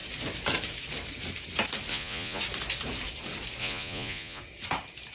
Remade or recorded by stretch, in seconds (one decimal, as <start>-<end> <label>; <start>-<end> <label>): 0.0-1.9 recorded; 1.9-2.4 remade; 2.4-3.6 recorded; 3.6-4.4 remade; 4.4-5.1 recorded